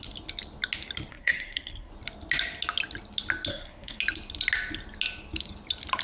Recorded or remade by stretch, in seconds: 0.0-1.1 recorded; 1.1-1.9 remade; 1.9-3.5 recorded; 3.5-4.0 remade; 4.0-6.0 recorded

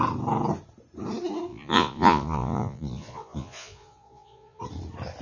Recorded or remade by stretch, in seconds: 0.0-1.5 recorded; 1.5-4.6 remade; 4.6-5.2 recorded

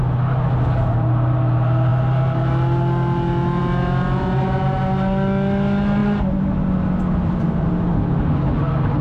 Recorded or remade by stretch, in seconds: 0.0-9.0 recorded

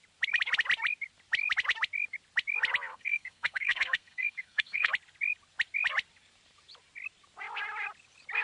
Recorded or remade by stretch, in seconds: 0.0-2.9 recorded; 2.9-4.9 remade; 4.9-8.4 recorded